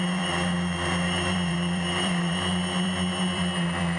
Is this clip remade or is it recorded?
remade